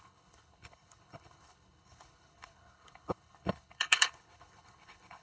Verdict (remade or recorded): remade